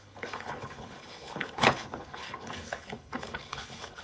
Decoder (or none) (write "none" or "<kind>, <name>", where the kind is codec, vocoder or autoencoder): codec, HILCodec